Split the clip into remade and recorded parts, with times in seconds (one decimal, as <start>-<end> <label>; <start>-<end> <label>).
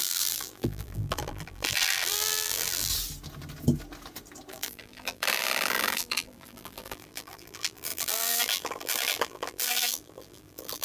0.0-2.9 remade; 2.9-4.5 recorded; 4.5-10.8 remade